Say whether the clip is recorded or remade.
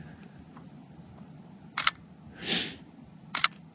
recorded